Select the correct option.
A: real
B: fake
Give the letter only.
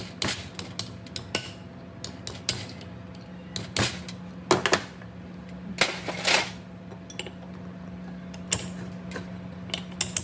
A